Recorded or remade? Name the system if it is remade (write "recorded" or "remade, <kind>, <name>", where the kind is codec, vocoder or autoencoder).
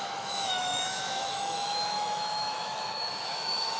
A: remade, autoencoder, DAC-VAE